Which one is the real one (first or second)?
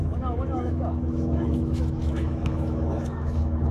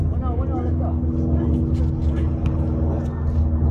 second